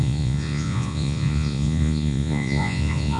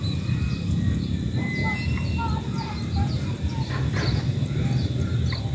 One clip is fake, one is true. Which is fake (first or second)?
first